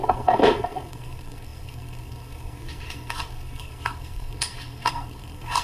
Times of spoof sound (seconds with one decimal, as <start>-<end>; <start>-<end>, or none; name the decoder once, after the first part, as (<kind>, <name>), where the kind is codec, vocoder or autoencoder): 0.0-5.6 (codec, SNAC)